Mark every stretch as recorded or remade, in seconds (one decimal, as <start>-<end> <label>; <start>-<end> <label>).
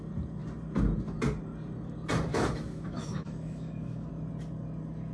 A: 0.0-2.3 recorded; 2.3-4.1 remade; 4.1-5.1 recorded